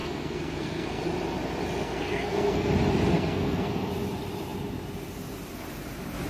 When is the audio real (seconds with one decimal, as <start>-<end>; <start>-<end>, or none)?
1.0-1.8; 2.7-3.1; 3.9-6.3

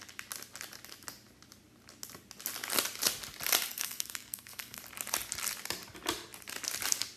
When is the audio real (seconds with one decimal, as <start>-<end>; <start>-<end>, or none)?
0.0-3.7; 4.8-7.2